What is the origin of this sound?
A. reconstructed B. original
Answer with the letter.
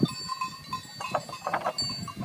B